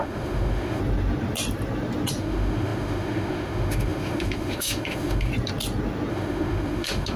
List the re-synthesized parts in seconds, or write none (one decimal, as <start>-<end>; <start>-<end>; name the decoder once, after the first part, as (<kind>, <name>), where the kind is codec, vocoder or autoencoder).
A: 0.0-0.8 (autoencoder, DAC-VAE); 2.2-5.3; 6.1-7.2